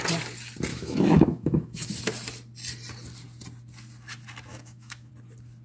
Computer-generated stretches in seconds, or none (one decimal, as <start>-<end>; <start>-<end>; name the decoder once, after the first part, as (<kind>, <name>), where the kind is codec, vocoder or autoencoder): 0.7-1.9 (autoencoder, DAC-VAE); 4.5-5.1